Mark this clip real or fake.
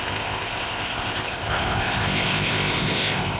fake